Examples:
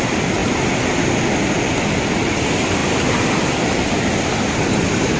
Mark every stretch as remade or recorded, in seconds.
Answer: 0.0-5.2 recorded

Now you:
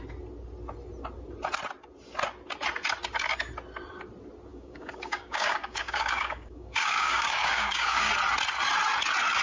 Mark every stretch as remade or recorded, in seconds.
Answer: 0.0-4.5 recorded; 4.5-8.1 remade; 8.1-9.4 recorded

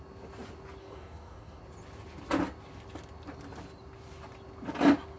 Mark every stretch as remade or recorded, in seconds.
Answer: 0.0-0.8 recorded; 0.8-1.6 remade; 1.6-5.2 recorded

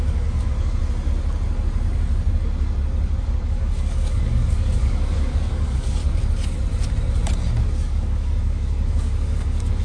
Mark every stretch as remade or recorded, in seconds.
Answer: 0.0-0.8 remade; 0.8-3.2 recorded; 3.2-6.0 remade; 6.0-7.6 recorded; 7.6-9.8 remade